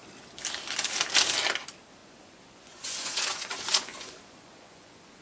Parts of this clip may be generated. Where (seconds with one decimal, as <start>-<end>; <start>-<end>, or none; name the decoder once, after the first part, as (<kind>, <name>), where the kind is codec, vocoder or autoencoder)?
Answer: 2.0-5.2 (vocoder, Vocos)